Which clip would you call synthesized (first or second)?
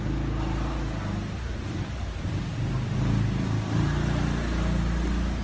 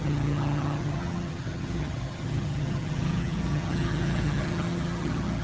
second